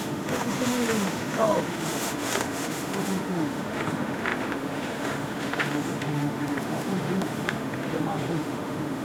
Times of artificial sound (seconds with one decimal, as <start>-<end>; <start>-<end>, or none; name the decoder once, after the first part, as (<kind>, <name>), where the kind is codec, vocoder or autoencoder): 0.0-9.0 (autoencoder, DAC-VAE)

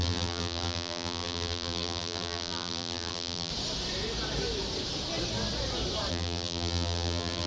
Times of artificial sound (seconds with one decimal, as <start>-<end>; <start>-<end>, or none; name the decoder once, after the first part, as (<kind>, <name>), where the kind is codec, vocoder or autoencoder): 0.0-3.5 (vocoder, BigVGAN v2); 6.1-7.5